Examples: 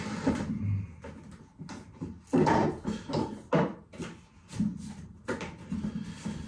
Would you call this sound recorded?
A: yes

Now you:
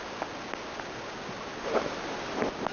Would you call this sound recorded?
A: yes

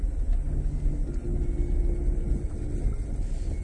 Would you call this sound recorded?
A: yes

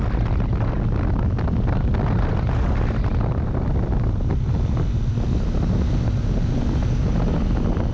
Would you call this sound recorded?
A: yes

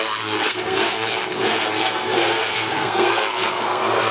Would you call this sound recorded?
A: no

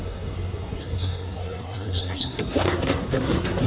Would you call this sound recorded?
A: no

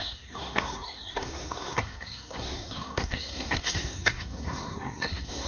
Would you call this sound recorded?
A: no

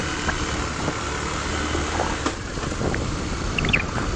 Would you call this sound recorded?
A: yes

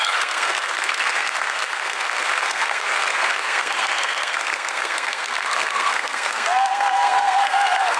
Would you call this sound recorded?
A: no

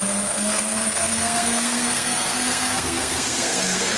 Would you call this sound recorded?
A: no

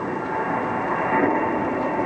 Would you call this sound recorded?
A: yes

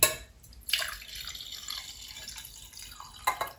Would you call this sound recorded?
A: yes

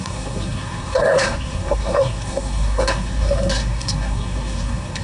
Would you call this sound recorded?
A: no